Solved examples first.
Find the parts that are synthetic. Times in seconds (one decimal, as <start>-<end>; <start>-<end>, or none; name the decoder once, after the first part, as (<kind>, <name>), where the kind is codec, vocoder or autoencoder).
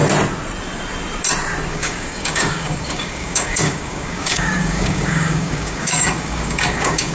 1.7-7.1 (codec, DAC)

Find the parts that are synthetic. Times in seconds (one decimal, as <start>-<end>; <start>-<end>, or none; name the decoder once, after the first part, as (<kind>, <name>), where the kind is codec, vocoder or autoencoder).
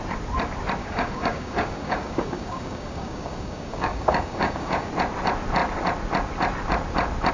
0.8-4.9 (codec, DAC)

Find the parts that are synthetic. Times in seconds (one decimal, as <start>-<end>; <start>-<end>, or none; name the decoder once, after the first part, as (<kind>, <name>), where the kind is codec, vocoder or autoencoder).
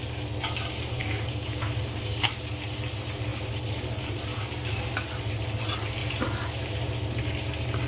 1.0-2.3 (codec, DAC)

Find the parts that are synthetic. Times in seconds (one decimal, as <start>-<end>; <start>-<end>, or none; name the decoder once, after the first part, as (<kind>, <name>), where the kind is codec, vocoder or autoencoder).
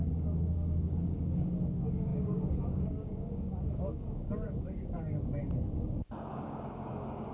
0.0-7.3 (codec, DAC)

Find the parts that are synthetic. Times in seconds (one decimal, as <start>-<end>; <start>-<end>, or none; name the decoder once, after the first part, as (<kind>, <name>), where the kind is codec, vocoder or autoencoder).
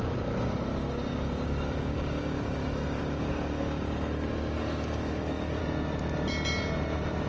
0.0-5.6 (codec, DAC)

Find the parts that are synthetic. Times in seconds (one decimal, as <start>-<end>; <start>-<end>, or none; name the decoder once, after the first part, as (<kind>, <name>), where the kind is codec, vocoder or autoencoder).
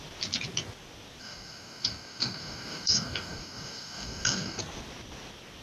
1.2-4.6 (codec, DAC)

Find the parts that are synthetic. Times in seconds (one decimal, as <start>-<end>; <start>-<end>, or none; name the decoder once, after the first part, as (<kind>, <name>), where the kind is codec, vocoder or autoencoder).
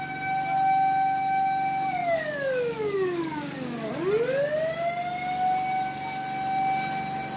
2.0-3.9 (codec, DAC)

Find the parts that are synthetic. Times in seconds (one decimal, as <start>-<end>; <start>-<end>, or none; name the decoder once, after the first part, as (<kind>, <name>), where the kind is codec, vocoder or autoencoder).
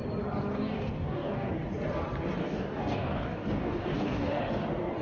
0.5-1.5 (codec, DAC); 2.4-4.4